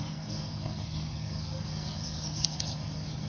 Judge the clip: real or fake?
fake